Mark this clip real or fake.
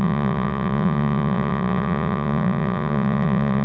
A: fake